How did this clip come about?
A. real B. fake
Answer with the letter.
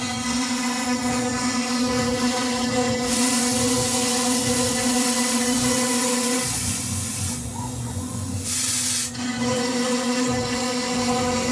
B